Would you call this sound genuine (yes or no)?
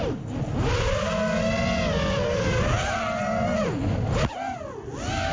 yes